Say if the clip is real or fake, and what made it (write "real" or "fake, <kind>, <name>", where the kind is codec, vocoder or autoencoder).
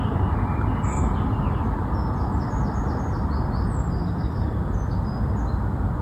real